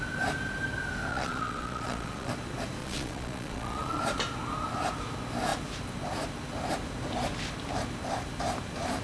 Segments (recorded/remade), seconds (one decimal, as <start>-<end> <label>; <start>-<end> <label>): 0.0-1.1 recorded; 1.1-2.3 remade; 2.3-2.8 recorded; 2.8-4.0 remade; 4.0-9.0 recorded